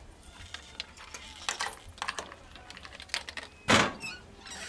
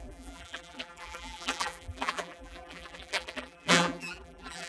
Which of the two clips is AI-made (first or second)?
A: second